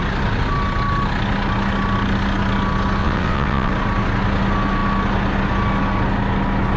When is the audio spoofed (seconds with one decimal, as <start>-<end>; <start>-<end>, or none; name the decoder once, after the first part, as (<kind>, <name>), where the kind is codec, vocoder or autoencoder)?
3.0-3.7 (vocoder, WaveNeXt)